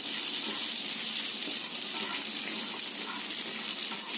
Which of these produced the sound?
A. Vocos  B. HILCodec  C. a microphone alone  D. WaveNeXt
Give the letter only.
C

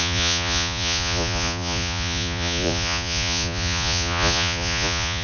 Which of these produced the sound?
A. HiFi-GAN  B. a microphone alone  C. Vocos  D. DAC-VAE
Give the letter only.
C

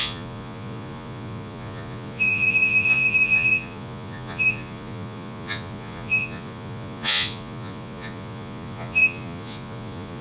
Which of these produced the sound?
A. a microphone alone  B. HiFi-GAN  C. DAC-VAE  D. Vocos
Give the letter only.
D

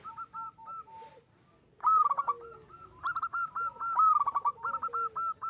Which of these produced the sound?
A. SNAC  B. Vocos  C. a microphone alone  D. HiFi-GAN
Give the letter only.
C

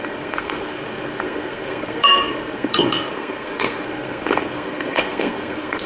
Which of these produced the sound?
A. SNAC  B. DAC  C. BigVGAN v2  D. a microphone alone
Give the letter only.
A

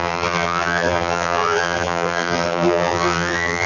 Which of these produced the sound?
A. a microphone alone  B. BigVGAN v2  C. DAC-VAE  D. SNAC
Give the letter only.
B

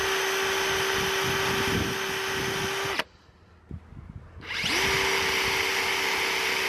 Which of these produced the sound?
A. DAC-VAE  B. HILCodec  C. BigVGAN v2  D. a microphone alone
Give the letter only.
D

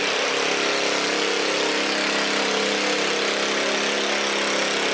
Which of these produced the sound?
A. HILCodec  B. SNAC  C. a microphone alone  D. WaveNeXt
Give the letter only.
C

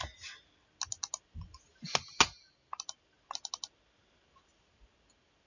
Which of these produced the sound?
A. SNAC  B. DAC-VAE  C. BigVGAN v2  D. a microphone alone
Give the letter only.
D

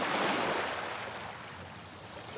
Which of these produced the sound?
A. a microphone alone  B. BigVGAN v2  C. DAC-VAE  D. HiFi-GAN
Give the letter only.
A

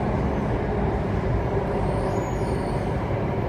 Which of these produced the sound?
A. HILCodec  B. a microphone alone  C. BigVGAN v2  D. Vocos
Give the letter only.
C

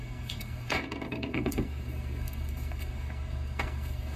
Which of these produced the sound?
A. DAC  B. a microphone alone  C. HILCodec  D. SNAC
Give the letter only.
D